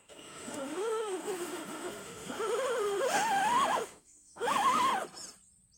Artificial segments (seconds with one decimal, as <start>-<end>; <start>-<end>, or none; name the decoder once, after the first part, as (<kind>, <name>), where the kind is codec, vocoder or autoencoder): 0.0-4.9 (autoencoder, DAC-VAE)